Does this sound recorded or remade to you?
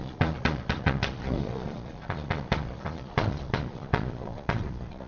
remade